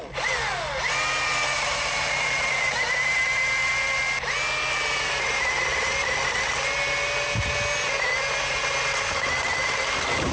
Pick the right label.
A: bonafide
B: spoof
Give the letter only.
A